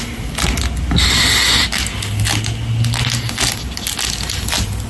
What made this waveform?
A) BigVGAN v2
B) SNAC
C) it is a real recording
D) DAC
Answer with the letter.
C